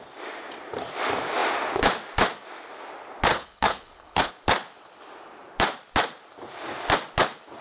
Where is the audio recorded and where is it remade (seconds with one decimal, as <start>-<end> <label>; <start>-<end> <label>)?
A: 0.0-3.3 recorded; 3.3-4.3 remade; 4.3-7.6 recorded